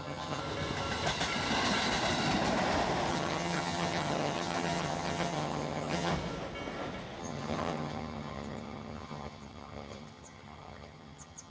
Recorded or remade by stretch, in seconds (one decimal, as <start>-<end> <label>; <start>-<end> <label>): 0.0-0.4 remade; 0.4-3.1 recorded; 3.1-6.1 remade; 6.1-7.2 recorded; 7.2-11.5 remade